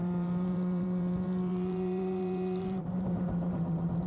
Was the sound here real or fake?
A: fake